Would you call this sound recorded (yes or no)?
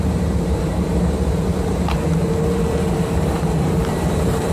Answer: no